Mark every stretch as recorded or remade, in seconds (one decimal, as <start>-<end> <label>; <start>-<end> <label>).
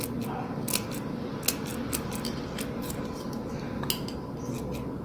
0.0-5.0 recorded